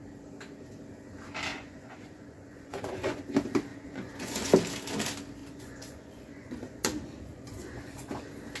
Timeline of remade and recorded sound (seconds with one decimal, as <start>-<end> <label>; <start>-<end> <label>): 0.0-1.5 recorded; 1.5-3.2 remade; 3.2-3.7 recorded; 3.7-4.5 remade; 4.5-5.4 recorded; 5.4-8.2 remade; 8.2-8.6 recorded